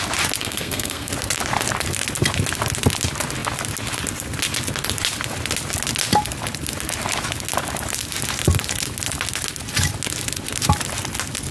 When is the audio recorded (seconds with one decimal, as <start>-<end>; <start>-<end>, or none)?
0.0-0.4; 1.1-11.5